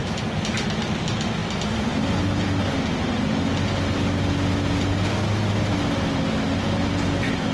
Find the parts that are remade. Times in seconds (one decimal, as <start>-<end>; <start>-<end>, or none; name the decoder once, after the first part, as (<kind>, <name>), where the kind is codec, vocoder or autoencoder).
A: none